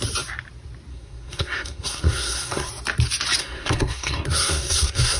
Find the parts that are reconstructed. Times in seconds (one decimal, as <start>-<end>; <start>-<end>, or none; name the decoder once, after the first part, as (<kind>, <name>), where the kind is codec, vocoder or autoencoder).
0.9-2.7 (codec, SNAC); 3.4-5.2